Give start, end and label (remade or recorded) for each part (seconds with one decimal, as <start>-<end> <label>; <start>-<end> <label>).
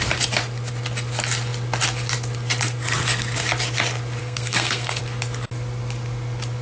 0.0-4.2 recorded; 4.2-5.0 remade; 5.0-6.6 recorded